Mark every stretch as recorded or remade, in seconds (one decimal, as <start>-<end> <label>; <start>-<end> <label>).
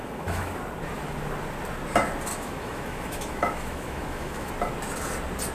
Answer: 0.0-0.5 remade; 0.5-2.3 recorded; 2.3-4.5 remade; 4.5-5.5 recorded